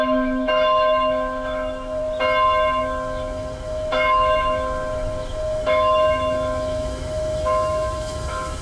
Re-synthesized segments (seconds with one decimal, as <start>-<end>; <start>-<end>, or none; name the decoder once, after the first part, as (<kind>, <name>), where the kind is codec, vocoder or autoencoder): 0.0-2.0 (autoencoder, DAC-VAE); 2.8-8.6